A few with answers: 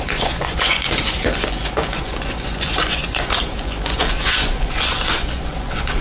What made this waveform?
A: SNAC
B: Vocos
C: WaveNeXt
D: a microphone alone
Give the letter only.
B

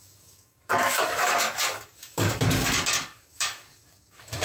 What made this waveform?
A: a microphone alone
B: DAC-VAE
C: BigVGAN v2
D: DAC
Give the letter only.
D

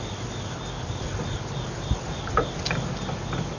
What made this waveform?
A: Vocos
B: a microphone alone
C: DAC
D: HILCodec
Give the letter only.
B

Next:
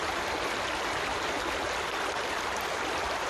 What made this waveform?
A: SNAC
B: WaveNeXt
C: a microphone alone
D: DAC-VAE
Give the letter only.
C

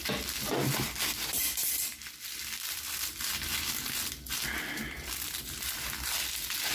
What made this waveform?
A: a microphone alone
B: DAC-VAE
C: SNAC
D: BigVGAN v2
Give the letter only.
A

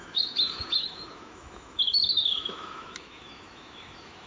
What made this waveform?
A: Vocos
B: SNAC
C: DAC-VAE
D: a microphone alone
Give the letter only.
C